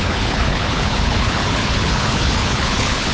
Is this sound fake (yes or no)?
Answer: yes